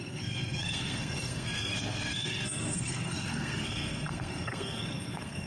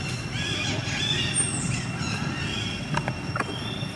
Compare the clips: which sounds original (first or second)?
second